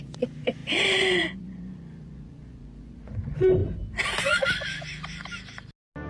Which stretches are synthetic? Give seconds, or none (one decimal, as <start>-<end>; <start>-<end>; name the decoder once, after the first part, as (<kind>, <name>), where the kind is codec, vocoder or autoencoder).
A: 0.0-3.6 (vocoder, Vocos); 4.2-4.9

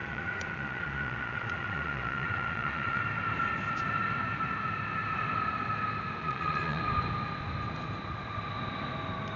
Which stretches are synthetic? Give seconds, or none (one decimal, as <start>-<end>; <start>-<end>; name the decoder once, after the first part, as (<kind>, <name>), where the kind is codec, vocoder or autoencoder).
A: 0.0-3.0 (vocoder, Vocos); 6.2-6.8

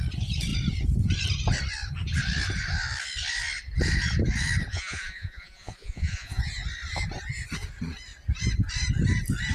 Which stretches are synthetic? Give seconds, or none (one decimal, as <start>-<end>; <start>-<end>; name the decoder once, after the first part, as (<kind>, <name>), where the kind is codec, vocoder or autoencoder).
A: 4.7-6.4 (vocoder, Vocos)

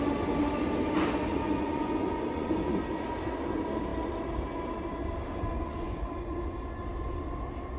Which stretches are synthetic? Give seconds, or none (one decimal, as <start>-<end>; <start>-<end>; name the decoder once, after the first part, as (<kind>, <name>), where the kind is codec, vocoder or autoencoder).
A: 1.3-2.8 (vocoder, Vocos); 5.5-6.8